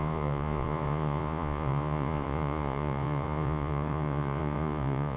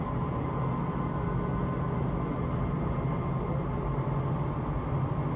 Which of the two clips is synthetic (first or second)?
first